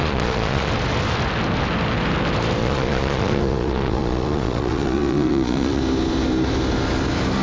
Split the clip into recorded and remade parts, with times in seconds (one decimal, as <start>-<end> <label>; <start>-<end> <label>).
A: 0.0-0.7 remade; 0.7-2.6 recorded; 2.6-5.8 remade; 5.8-7.4 recorded